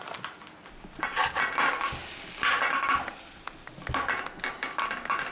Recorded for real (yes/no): yes